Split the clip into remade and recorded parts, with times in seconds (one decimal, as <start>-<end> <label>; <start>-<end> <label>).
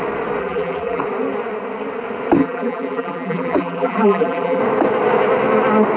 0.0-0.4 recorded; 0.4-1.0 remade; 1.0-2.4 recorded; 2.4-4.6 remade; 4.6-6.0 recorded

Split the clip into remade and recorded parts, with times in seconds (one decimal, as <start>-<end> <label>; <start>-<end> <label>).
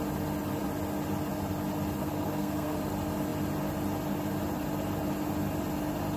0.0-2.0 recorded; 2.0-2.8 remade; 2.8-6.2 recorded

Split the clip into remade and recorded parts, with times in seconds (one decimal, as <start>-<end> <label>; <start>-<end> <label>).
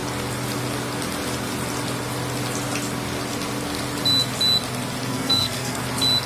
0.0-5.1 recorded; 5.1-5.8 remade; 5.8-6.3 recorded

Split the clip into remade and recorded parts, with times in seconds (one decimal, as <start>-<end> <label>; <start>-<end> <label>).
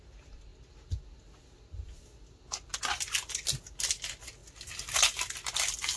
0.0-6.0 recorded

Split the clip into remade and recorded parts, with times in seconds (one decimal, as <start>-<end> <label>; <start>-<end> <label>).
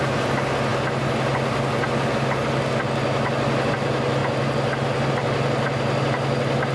0.0-6.7 recorded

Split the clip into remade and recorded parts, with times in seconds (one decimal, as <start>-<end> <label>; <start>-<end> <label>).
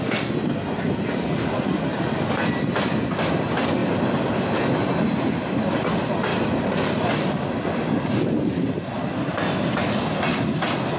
0.0-6.3 recorded; 6.3-7.1 remade; 7.1-11.0 recorded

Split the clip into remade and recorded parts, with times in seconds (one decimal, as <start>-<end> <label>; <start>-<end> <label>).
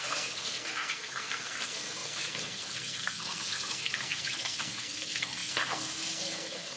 0.0-6.8 remade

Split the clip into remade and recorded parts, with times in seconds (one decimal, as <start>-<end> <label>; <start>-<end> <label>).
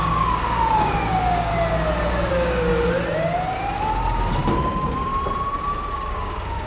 0.0-1.5 remade; 1.5-2.3 recorded; 2.3-2.7 remade; 2.7-4.5 recorded; 4.5-5.1 remade; 5.1-5.9 recorded; 5.9-6.7 remade